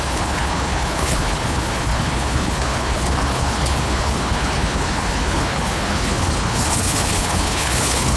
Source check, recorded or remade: remade